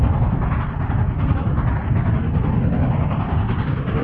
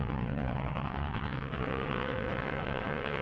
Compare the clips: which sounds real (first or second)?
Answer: first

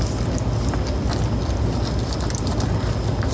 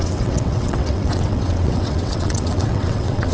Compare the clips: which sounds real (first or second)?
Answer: first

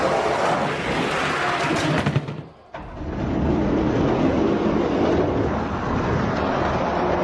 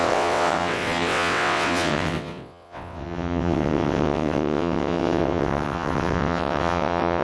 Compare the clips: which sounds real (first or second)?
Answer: first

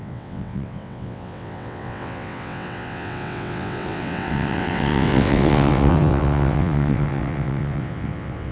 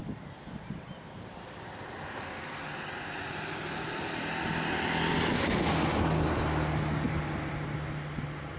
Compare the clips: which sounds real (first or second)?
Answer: second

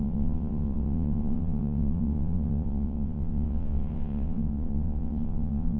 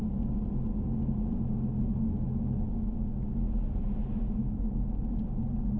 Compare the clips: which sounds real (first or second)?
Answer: second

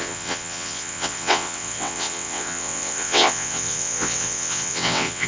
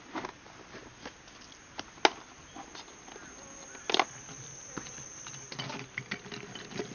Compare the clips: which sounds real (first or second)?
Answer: second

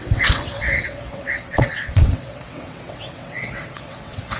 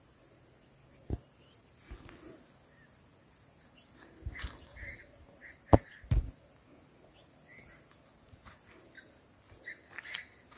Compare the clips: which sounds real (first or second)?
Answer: second